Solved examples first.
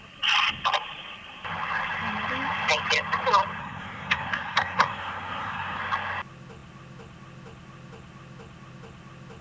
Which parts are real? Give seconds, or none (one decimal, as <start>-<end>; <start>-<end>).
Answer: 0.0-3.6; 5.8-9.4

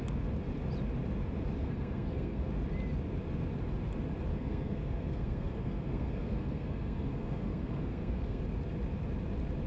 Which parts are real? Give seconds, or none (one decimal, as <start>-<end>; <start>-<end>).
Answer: 0.0-1.6; 2.5-4.3; 8.4-9.7

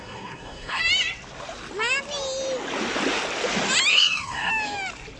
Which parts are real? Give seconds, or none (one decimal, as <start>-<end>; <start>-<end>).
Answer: 0.8-3.9; 4.5-5.2

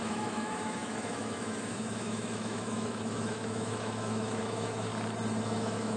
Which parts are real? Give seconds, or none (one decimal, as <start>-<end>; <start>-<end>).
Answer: 4.9-5.4

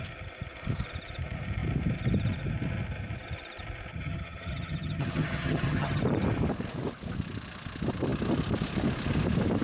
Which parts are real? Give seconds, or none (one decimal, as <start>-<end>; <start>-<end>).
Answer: 0.0-3.9; 6.0-9.6

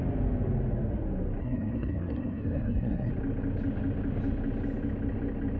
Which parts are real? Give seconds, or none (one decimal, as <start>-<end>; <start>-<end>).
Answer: 0.0-1.4; 3.1-5.6

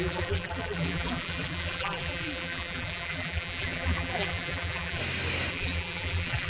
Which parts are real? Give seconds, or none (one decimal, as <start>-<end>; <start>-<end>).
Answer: 5.0-5.5

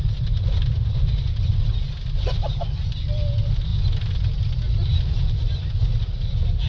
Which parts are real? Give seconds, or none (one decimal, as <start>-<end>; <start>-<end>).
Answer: 1.7-2.6; 3.7-5.0